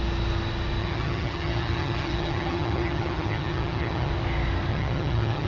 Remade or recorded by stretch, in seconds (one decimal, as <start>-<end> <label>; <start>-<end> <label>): 0.0-0.8 recorded; 0.8-4.1 remade; 4.1-4.7 recorded; 4.7-5.5 remade